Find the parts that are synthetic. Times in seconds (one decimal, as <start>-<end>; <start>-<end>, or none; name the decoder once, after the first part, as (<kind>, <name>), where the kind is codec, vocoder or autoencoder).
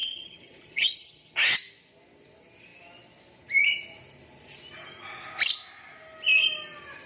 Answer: 0.0-1.5 (vocoder, HiFi-GAN)